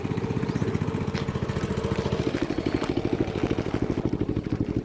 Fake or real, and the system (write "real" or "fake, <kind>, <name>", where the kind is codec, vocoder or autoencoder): real